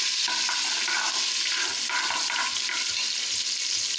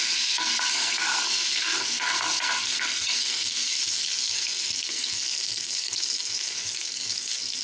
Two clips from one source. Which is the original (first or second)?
first